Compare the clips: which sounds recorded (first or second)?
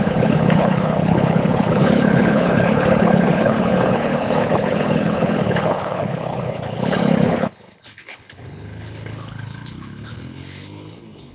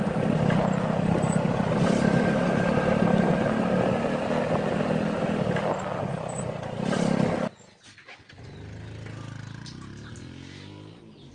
second